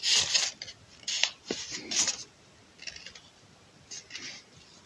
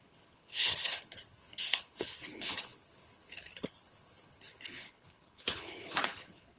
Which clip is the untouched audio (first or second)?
first